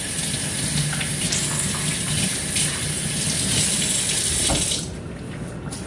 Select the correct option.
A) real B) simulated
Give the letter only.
A